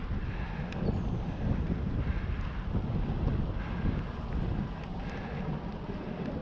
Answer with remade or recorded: recorded